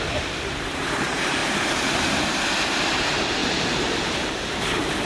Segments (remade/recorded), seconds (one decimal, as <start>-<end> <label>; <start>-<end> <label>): 0.0-5.1 remade